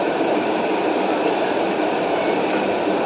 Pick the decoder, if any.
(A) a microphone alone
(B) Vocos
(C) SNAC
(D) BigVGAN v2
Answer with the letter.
D